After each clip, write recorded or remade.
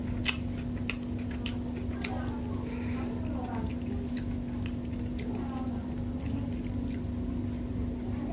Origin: recorded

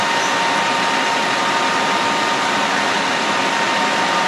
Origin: recorded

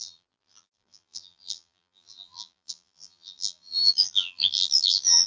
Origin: remade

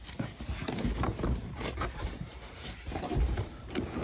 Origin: remade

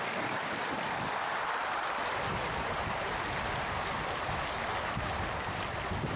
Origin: recorded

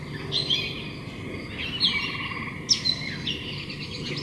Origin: recorded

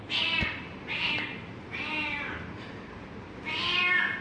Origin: recorded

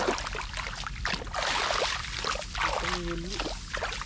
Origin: recorded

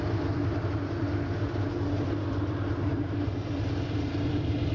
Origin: remade